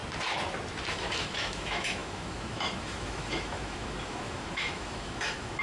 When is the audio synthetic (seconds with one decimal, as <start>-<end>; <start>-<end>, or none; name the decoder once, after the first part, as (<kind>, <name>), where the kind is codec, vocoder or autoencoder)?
0.9-5.6 (autoencoder, DAC-VAE)